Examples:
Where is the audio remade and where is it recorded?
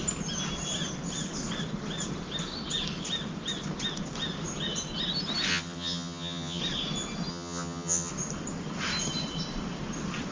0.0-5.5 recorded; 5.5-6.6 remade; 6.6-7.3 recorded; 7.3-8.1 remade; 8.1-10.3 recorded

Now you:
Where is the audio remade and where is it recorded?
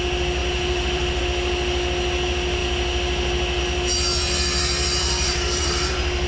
0.0-0.4 recorded; 0.4-1.2 remade; 1.2-5.0 recorded; 5.0-6.3 remade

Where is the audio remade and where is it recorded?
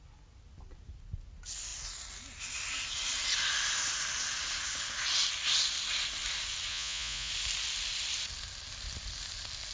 0.0-6.7 recorded; 6.7-7.3 remade; 7.3-9.7 recorded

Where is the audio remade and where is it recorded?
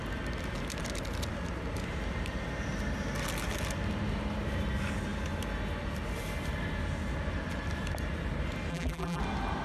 0.0-8.7 recorded; 8.7-9.2 remade; 9.2-9.6 recorded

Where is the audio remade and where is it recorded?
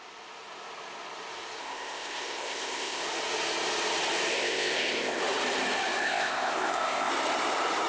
0.0-1.6 recorded; 1.6-3.0 remade; 3.0-4.3 recorded; 4.3-5.2 remade; 5.2-6.0 recorded; 6.0-7.1 remade; 7.1-7.9 recorded